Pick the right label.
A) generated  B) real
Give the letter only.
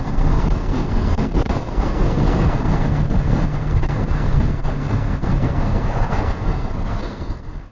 A